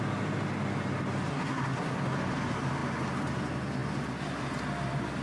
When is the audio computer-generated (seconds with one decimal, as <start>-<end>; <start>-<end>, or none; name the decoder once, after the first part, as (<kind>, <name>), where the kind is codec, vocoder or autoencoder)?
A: 1.3-2.0 (codec, SNAC)